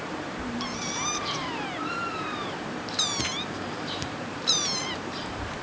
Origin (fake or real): fake